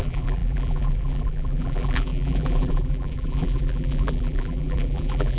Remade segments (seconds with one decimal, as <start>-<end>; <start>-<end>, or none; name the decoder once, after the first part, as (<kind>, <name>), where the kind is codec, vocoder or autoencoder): 0.0-5.4 (vocoder, BigVGAN v2)